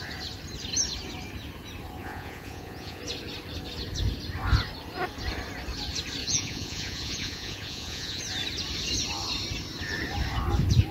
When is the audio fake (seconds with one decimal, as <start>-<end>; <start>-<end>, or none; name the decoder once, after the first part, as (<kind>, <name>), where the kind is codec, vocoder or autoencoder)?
2.0-3.0 (vocoder, Vocos); 6.2-8.2